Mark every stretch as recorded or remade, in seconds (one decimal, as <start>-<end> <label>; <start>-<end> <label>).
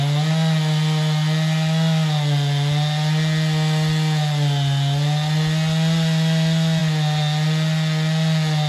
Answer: 0.0-8.7 recorded